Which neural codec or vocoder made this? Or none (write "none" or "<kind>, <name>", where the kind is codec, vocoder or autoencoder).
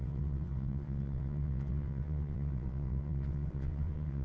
vocoder, WaveNeXt